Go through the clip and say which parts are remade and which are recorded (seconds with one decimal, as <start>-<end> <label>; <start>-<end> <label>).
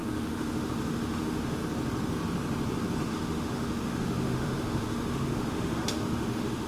0.0-1.6 remade; 1.6-3.1 recorded; 3.1-6.7 remade